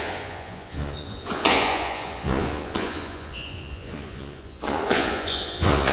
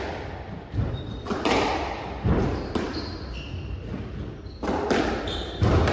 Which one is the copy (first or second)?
first